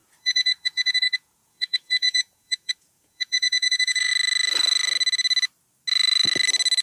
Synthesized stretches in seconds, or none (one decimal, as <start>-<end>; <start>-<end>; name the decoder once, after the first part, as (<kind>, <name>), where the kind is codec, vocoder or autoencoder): 0.0-4.1 (vocoder, Vocos)